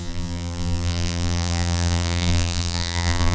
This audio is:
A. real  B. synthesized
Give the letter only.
B